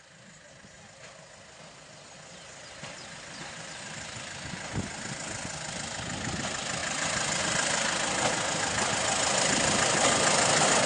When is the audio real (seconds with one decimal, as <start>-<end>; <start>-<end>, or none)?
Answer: 0.0-10.9